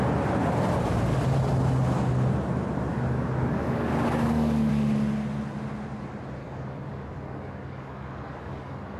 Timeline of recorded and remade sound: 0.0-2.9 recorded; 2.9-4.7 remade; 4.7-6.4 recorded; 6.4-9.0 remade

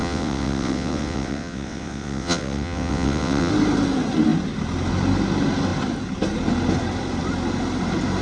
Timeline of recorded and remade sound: 0.0-3.5 remade; 3.5-8.2 recorded

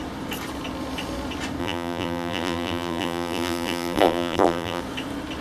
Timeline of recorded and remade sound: 0.0-1.6 recorded; 1.6-4.8 remade; 4.8-5.4 recorded

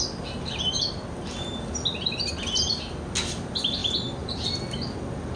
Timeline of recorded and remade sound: 0.0-5.4 recorded

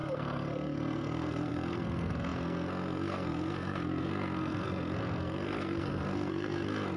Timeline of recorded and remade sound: 0.0-7.0 remade

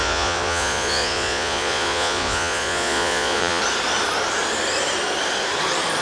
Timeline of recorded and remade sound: 0.0-3.6 remade; 3.6-6.0 recorded